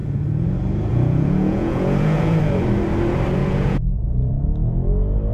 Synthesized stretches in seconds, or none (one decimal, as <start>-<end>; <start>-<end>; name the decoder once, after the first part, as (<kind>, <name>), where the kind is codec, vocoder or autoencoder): 0.0-0.5 (vocoder, Vocos); 0.9-2.4; 3.4-4.3